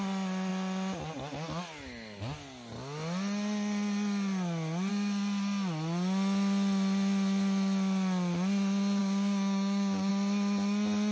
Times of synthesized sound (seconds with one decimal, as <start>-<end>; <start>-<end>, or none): 9.0-10.1